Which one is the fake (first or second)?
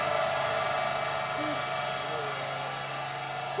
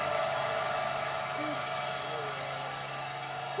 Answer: second